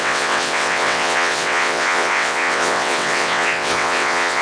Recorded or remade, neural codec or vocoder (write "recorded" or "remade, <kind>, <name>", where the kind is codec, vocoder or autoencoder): remade, vocoder, WaveNeXt